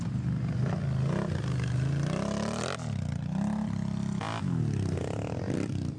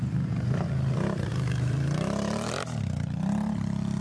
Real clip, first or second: first